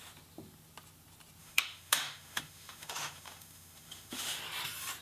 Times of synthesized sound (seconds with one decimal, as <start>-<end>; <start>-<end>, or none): 1.4-4.4